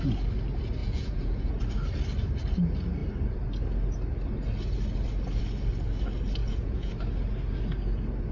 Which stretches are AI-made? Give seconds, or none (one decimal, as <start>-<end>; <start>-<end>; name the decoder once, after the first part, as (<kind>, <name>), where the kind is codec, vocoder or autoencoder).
0.8-1.5 (vocoder, Vocos); 6.4-6.9